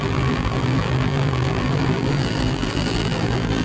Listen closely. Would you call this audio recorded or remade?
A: remade